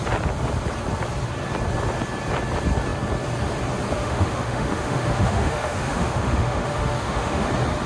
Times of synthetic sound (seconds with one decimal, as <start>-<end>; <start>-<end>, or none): 4.0-7.5